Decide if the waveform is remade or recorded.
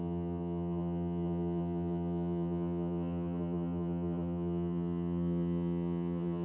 remade